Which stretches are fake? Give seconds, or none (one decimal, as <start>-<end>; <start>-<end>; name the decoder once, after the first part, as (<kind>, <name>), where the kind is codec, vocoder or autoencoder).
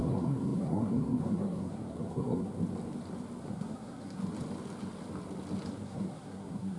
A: 0.0-2.5 (codec, SNAC); 3.4-4.2; 5.7-6.8